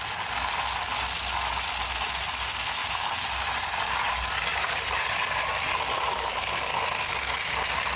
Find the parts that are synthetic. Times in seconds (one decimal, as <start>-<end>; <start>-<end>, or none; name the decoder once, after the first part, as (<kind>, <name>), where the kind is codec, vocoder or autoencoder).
2.8-3.7 (vocoder, BigVGAN v2); 4.5-5.3